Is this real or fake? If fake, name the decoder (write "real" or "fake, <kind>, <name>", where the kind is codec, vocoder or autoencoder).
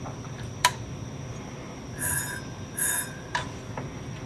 real